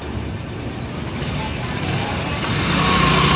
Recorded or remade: recorded